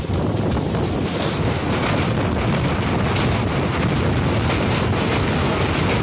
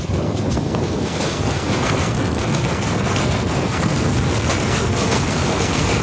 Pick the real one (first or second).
first